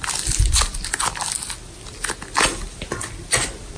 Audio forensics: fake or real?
real